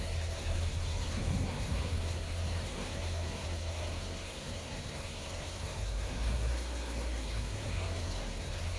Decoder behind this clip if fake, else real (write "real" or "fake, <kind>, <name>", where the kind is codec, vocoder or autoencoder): fake, codec, SNAC